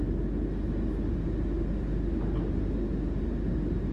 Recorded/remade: recorded